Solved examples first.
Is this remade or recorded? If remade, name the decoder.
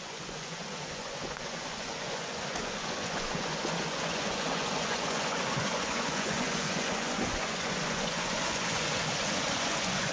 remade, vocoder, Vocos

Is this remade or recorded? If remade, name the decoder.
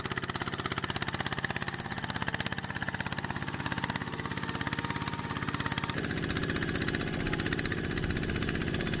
recorded